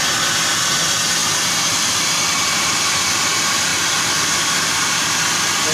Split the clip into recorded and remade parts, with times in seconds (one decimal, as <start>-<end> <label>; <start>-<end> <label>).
0.0-1.2 recorded; 1.2-2.8 remade; 2.8-3.7 recorded; 3.7-5.2 remade; 5.2-5.7 recorded